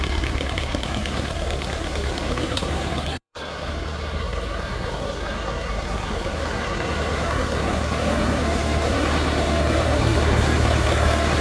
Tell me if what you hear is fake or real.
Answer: fake